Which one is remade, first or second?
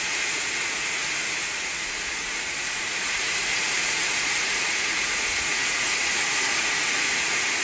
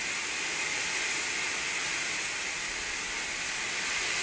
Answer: first